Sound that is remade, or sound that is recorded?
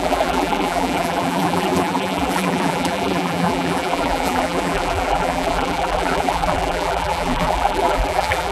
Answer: remade